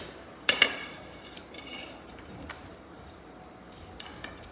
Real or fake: fake